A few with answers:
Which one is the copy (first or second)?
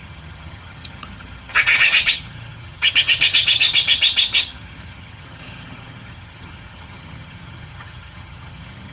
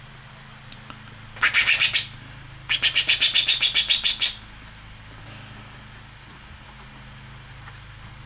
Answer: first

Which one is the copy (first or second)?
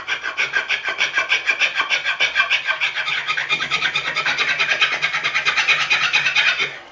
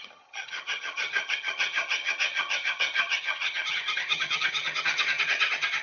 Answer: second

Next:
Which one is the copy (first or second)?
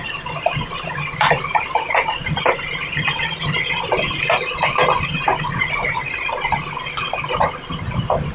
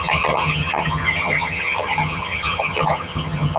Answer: second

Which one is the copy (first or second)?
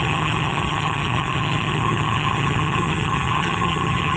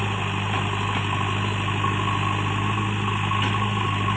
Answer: first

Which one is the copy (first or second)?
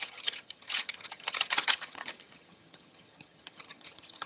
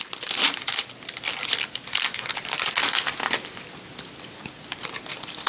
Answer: first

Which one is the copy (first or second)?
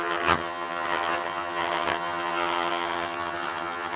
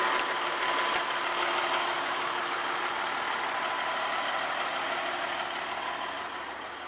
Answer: first